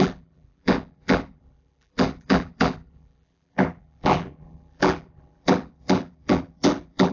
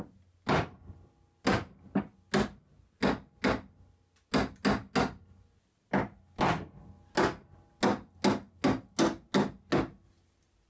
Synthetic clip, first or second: first